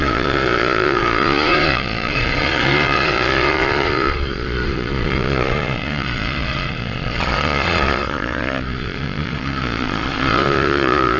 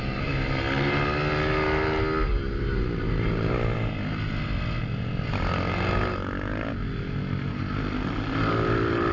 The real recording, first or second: second